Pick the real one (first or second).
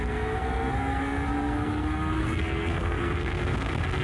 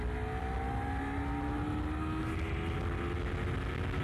second